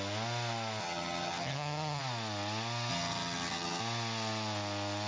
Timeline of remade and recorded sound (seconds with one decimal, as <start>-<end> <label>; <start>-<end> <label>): 0.0-0.8 recorded; 0.8-2.0 remade; 2.0-2.9 recorded; 2.9-3.8 remade; 3.8-5.1 recorded

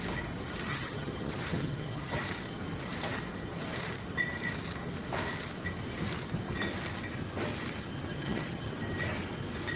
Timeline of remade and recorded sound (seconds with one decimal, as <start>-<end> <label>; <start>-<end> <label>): 0.0-0.7 recorded; 0.7-2.1 remade; 2.1-8.1 recorded; 8.1-8.7 remade; 8.7-9.8 recorded

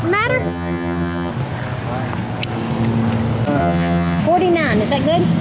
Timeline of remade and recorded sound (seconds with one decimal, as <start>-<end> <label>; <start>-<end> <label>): 0.0-0.4 recorded; 0.4-1.3 remade; 1.3-3.6 recorded; 3.6-4.2 remade; 4.2-5.4 recorded

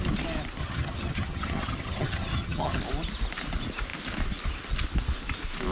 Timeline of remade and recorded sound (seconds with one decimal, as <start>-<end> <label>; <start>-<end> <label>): 0.0-0.6 recorded; 0.6-2.8 remade; 2.8-5.7 recorded

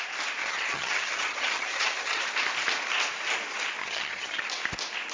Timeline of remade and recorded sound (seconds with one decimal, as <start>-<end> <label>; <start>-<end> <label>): 0.0-0.4 recorded; 0.4-2.2 remade; 2.2-3.8 recorded; 3.8-4.4 remade; 4.4-5.1 recorded

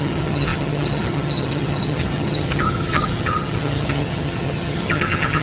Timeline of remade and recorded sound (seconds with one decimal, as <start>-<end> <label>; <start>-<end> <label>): 0.0-5.4 remade

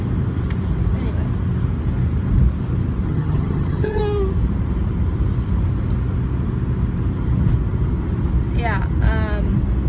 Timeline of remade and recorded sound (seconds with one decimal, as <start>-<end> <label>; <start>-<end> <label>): 0.0-3.1 recorded; 3.1-4.0 remade; 4.0-9.9 recorded

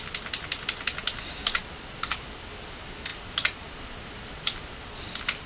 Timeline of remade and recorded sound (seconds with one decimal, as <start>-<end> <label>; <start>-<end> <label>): 0.0-5.5 recorded